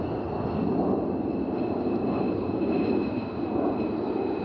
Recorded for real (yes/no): yes